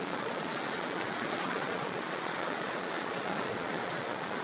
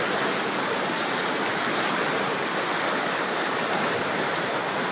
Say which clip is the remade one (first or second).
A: first